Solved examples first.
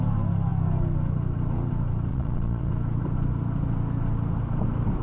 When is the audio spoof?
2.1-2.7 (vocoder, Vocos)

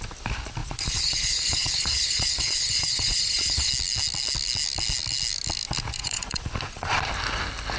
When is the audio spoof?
0.6-3.7 (vocoder, Vocos); 6.0-7.1

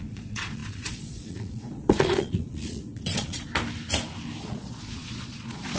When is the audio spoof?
0.0-3.5 (vocoder, Vocos); 4.4-5.8